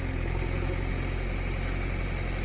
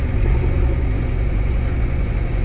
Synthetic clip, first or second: second